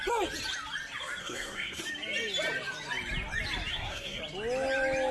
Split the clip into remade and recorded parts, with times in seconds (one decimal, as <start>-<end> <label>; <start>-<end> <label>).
0.0-1.2 recorded; 1.2-1.8 remade; 1.8-3.7 recorded; 3.7-4.2 remade; 4.2-5.1 recorded